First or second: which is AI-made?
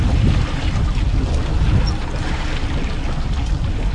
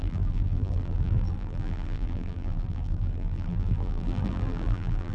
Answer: second